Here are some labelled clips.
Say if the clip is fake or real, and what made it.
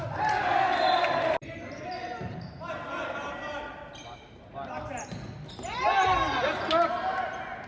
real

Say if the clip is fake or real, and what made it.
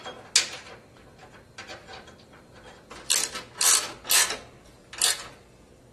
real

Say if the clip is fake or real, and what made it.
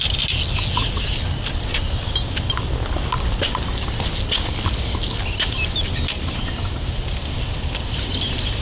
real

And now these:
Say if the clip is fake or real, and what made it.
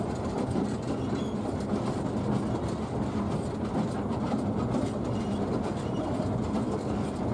real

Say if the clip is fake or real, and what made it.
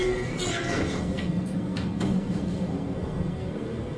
fake, codec, SNAC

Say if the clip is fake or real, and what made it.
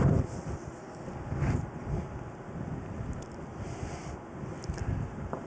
real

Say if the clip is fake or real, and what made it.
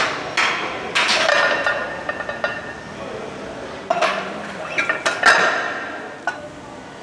real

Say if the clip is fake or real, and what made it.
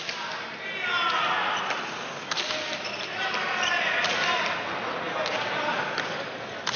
real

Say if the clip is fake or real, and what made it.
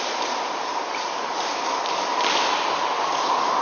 real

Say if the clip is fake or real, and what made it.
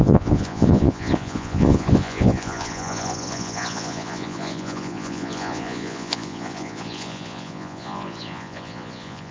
fake, vocoder, Vocos